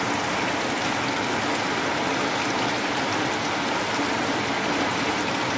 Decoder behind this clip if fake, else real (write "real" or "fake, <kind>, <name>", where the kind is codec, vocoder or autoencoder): real